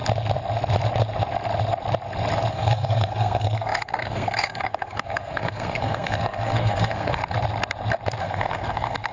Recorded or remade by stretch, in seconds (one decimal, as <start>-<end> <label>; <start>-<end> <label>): 0.0-2.5 recorded; 2.5-7.2 remade; 7.2-8.2 recorded; 8.2-9.1 remade

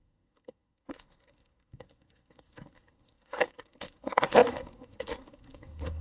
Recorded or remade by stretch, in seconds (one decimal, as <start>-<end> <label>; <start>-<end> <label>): 0.0-6.0 remade

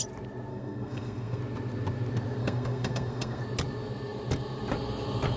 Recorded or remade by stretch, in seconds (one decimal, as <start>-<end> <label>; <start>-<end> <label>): 0.0-0.5 recorded; 0.5-1.4 remade; 1.4-2.4 recorded; 2.4-3.4 remade; 3.4-5.4 recorded